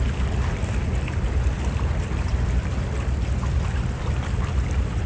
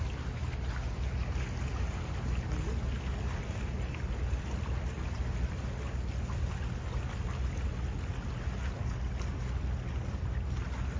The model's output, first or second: first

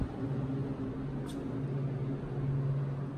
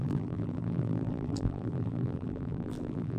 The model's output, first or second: second